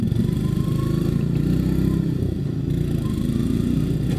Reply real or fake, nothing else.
real